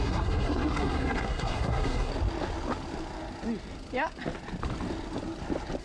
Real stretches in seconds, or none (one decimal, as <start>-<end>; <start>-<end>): 2.1-5.8